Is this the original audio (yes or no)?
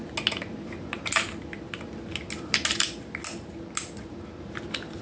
yes